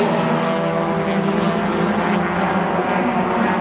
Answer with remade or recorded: recorded